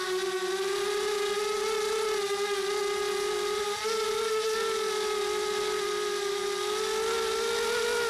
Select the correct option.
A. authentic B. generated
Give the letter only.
A